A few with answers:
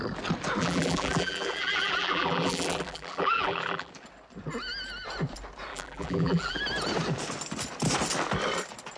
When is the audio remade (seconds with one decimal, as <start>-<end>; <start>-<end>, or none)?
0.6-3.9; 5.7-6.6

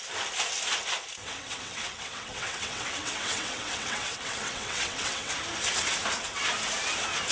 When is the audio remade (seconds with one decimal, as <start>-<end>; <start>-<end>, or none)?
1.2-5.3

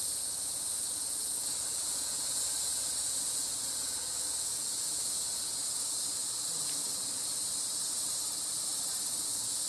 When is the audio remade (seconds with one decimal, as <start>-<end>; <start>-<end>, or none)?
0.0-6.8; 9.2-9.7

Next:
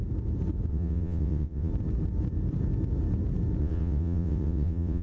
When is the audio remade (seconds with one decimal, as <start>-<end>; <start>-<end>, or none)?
0.7-1.7; 3.6-5.0

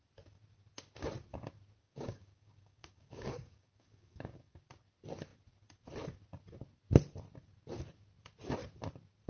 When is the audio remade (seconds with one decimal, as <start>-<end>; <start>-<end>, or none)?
1.8-4.5